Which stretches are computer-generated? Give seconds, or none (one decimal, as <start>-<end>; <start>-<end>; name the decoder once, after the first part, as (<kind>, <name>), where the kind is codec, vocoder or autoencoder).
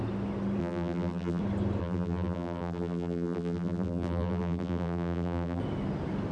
0.6-1.4 (vocoder, BigVGAN v2); 1.8-5.6